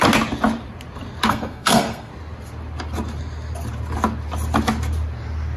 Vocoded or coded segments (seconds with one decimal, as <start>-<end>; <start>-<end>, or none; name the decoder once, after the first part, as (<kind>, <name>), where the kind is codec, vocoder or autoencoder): 1.3-2.1 (codec, SNAC)